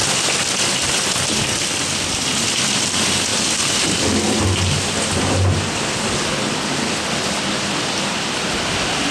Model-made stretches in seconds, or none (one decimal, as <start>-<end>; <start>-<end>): none